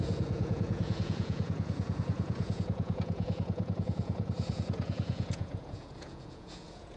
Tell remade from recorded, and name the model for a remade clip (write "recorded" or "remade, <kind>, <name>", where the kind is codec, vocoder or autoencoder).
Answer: remade, vocoder, Vocos